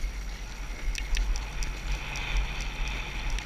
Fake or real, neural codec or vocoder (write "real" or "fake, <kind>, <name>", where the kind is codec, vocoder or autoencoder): real